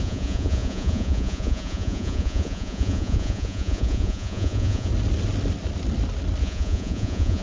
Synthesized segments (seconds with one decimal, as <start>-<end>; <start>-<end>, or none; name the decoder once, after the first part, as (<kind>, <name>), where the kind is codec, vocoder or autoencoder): 0.0-4.9 (vocoder, Vocos); 6.4-7.4